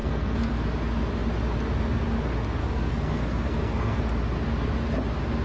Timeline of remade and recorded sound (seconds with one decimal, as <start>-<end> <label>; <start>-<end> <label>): 0.0-0.5 remade; 0.5-2.6 recorded; 2.6-4.0 remade; 4.0-5.4 recorded

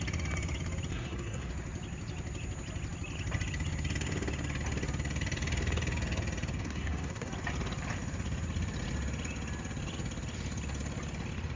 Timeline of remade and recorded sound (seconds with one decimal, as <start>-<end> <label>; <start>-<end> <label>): 0.0-0.9 recorded; 0.9-1.5 remade; 1.5-6.5 recorded; 6.5-7.3 remade; 7.3-11.6 recorded